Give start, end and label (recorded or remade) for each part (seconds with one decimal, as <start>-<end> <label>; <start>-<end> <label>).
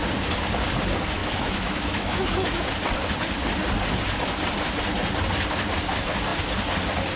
0.0-1.2 recorded; 1.2-2.7 remade; 2.7-7.2 recorded